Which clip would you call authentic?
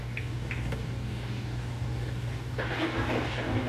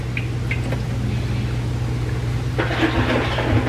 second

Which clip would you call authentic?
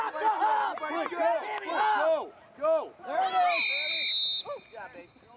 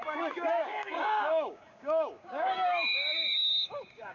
first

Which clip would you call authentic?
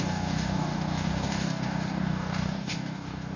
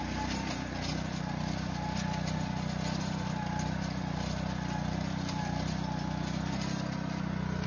second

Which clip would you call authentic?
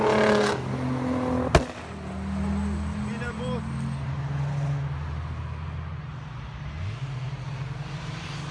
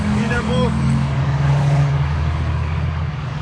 first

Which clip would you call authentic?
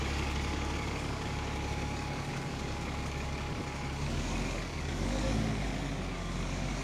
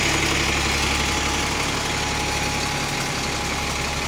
second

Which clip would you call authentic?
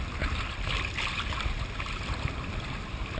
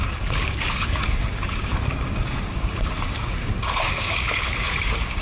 first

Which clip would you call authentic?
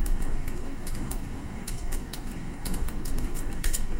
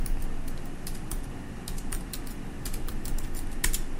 second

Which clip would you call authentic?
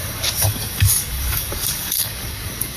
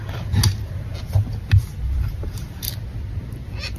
second